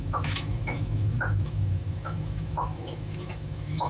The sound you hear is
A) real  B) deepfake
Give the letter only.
B